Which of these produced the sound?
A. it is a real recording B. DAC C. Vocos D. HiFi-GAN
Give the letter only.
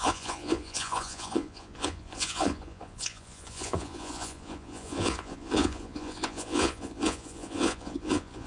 C